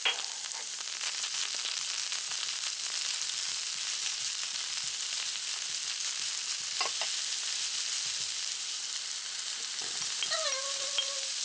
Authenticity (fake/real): real